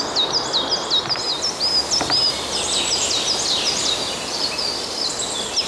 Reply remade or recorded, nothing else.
recorded